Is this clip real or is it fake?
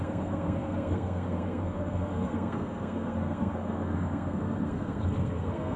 fake